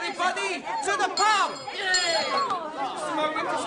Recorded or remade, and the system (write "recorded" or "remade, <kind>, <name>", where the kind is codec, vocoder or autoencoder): recorded